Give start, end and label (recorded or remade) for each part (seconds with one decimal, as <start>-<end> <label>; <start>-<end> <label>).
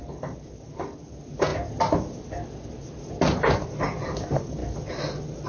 0.0-5.5 recorded